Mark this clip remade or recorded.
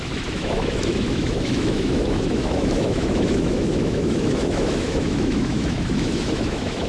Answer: remade